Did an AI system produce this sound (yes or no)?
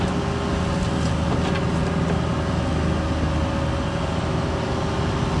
no